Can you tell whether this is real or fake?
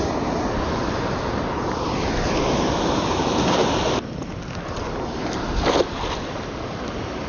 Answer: real